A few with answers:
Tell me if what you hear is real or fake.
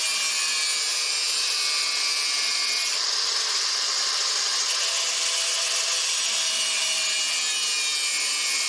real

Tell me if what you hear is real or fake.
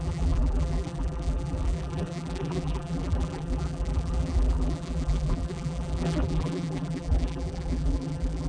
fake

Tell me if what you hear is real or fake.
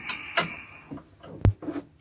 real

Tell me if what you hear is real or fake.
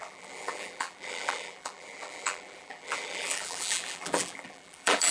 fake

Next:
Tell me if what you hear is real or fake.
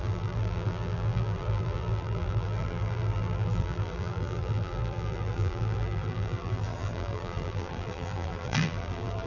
fake